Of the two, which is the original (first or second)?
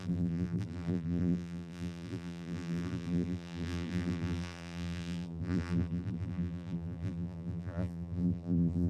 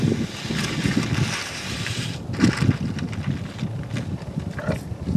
second